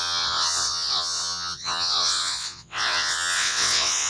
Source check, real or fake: fake